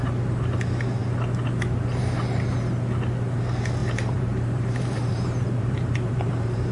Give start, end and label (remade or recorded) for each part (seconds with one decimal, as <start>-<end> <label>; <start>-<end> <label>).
0.0-3.8 recorded; 3.8-6.7 remade